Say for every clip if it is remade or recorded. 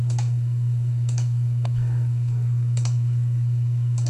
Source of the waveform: remade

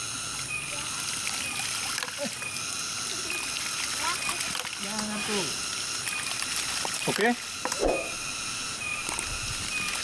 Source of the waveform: recorded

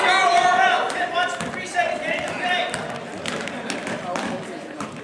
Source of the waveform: recorded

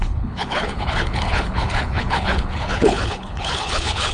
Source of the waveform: remade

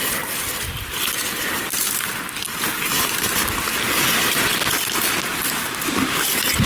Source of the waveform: recorded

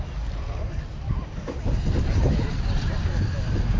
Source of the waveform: recorded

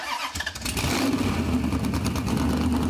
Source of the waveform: recorded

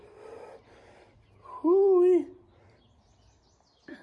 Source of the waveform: recorded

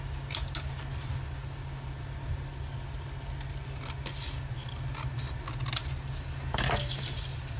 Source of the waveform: recorded